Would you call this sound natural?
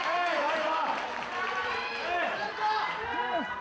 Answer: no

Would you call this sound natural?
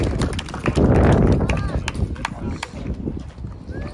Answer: yes